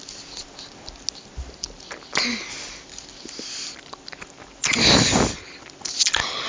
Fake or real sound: real